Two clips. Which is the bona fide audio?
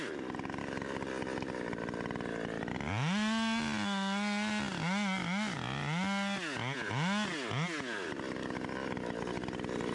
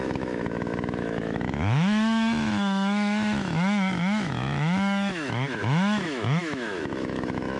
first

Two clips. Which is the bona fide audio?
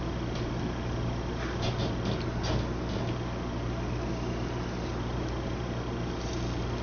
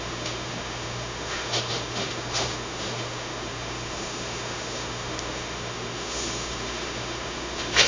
first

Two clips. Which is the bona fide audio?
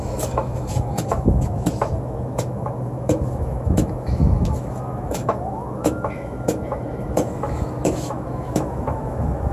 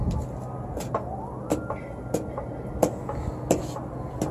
second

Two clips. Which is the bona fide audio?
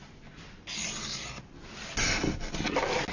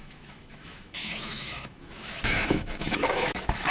first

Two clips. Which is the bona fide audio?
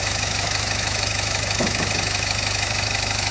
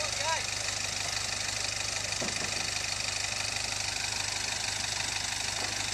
second